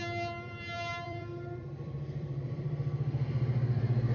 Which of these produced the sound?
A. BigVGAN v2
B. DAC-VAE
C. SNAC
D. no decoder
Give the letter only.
A